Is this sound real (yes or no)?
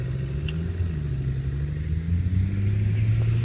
yes